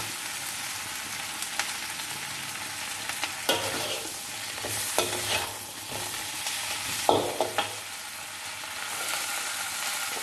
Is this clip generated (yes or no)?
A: no